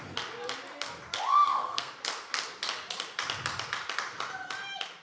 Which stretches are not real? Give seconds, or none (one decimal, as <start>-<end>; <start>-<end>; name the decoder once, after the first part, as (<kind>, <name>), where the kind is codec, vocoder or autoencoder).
1.3-1.9 (codec, SNAC)